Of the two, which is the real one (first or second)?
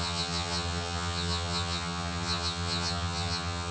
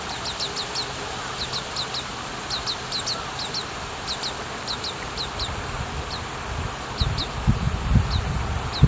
second